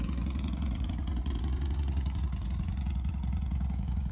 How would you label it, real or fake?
fake